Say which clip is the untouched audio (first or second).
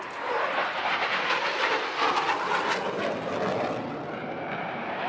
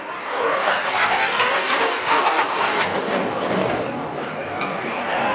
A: first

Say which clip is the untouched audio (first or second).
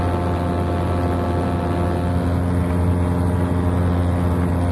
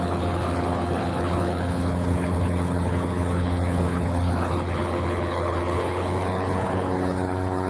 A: first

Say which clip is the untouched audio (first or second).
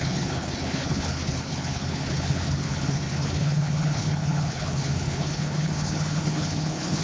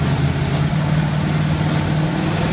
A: second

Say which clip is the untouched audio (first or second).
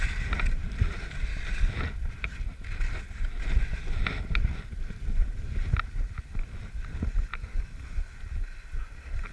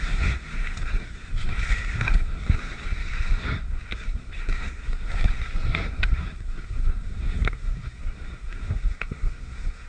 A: first